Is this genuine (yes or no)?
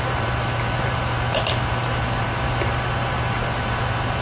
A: no